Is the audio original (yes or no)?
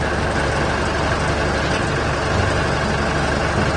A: yes